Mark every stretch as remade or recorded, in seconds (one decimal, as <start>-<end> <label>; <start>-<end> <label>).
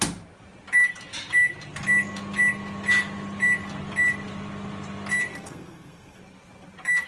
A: 0.0-5.3 recorded; 5.3-6.2 remade; 6.2-7.1 recorded